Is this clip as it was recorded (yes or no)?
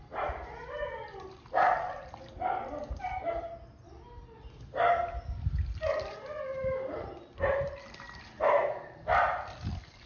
yes